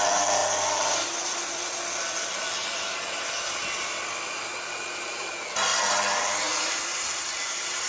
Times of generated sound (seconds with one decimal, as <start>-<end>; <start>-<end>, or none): 0.0-3.6; 4.3-7.9